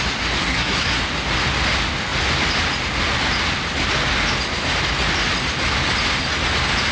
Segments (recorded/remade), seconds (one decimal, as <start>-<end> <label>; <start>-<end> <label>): 0.0-0.4 recorded; 0.4-1.0 remade; 1.0-6.9 recorded